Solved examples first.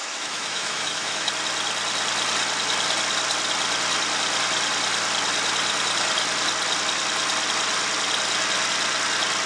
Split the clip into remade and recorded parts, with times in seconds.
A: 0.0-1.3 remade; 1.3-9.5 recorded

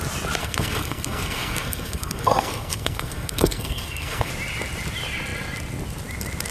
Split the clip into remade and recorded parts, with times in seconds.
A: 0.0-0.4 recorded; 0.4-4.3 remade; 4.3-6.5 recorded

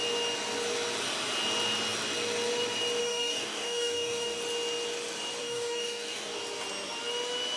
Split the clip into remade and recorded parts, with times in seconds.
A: 0.0-3.0 recorded; 3.0-4.4 remade; 4.4-5.4 recorded; 5.4-6.4 remade; 6.4-7.6 recorded

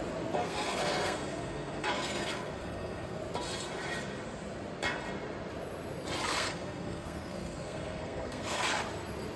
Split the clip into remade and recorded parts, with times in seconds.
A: 0.0-0.4 recorded; 0.4-3.2 remade; 3.2-6.3 recorded; 6.3-8.6 remade; 8.6-9.4 recorded